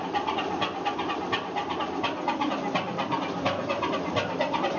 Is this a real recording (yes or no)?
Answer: yes